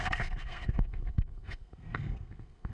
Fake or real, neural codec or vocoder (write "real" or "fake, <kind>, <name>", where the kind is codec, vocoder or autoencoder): fake, codec, SNAC